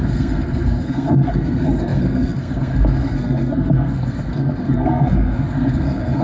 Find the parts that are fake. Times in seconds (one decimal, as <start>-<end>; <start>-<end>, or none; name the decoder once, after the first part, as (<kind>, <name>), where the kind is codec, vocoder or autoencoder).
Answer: 0.0-6.2 (codec, SNAC)